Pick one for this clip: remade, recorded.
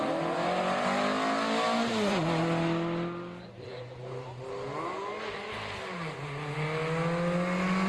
recorded